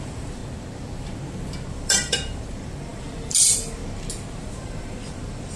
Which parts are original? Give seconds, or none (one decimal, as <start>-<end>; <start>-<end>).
0.4-1.7; 3.8-4.5